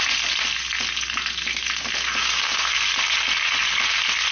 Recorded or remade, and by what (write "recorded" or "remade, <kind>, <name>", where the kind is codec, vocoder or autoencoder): recorded